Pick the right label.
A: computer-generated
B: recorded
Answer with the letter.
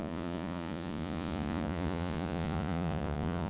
A